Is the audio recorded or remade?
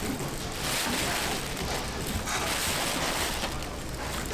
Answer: recorded